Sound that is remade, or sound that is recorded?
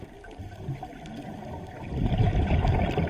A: recorded